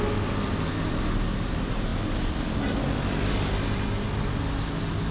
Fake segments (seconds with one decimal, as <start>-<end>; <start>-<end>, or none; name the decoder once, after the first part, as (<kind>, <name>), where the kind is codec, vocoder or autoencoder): none